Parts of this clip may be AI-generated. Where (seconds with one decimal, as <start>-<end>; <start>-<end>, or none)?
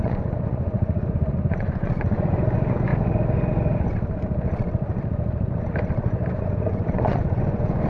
0.0-2.9; 6.3-7.9